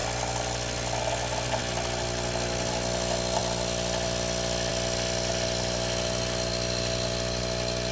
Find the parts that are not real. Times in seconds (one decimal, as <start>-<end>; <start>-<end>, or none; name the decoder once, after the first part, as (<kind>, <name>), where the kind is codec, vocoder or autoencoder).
0.0-1.6 (vocoder, BigVGAN v2); 3.4-4.7

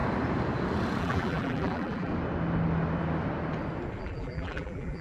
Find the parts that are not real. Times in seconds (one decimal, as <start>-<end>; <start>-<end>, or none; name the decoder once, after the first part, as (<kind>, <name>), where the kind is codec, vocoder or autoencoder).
1.0-2.1 (vocoder, BigVGAN v2); 4.0-5.0

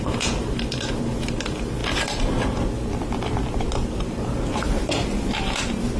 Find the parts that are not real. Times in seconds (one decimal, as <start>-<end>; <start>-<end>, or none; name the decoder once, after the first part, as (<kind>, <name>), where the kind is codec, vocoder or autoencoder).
none